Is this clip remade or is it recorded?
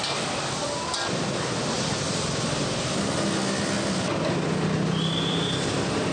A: recorded